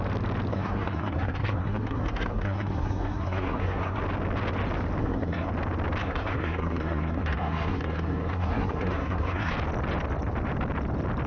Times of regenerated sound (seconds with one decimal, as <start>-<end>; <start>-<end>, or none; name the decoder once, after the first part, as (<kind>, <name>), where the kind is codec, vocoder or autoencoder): 0.5-4.0 (codec, SNAC); 5.0-5.5; 6.0-9.5